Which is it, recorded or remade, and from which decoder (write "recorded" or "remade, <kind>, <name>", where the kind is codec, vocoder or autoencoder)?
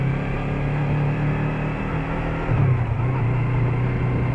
recorded